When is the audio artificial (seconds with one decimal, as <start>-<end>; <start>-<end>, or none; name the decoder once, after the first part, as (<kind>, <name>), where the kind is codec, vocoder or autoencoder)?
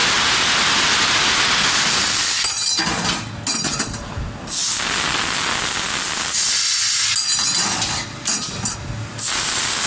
none